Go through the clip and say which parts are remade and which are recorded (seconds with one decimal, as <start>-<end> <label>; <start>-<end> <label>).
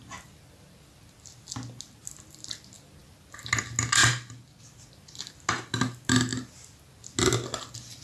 0.0-8.0 recorded